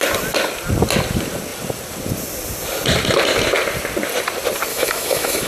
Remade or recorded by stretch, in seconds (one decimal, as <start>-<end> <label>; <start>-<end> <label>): 0.0-4.7 recorded; 4.7-5.5 remade